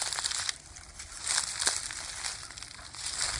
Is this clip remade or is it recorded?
recorded